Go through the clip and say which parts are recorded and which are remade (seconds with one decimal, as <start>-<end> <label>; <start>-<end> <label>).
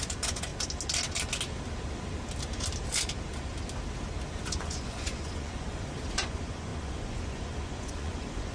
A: 0.0-0.5 remade; 0.5-4.3 recorded; 4.3-8.5 remade